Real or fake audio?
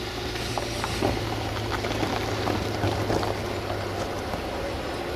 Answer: real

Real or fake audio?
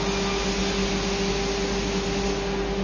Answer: real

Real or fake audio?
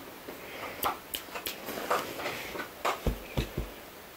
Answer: real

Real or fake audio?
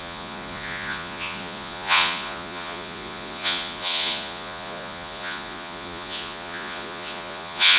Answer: fake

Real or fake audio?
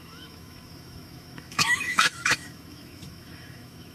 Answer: fake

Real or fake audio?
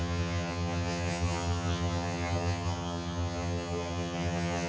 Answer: fake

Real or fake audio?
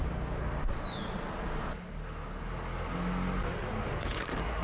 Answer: real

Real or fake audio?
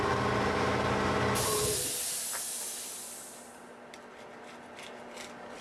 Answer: real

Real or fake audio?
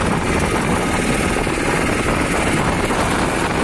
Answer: real